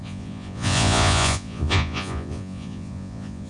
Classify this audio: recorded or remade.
remade